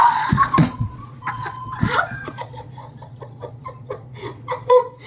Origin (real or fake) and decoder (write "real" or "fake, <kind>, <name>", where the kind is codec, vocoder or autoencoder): fake, vocoder, Vocos